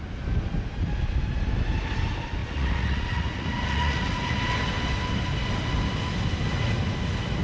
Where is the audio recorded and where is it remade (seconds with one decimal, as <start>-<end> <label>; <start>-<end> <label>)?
0.0-2.4 recorded; 2.4-4.4 remade; 4.4-7.4 recorded